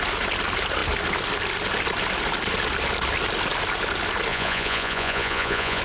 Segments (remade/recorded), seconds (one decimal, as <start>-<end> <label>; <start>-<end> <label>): 0.0-4.3 recorded; 4.3-5.8 remade